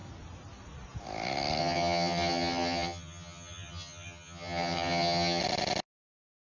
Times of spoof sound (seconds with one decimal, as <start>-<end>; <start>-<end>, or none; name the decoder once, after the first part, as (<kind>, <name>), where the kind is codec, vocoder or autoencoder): 1.6-5.4 (vocoder, HiFi-GAN)